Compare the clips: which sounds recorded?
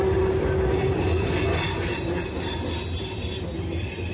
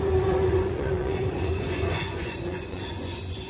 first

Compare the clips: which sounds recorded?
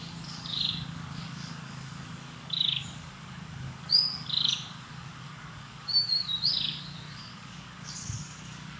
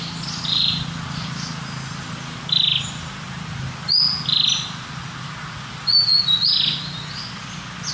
second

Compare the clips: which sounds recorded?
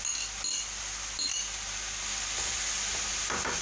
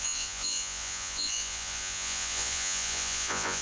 first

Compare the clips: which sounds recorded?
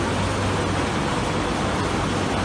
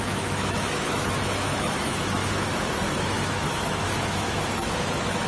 first